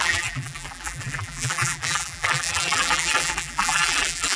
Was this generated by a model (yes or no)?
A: yes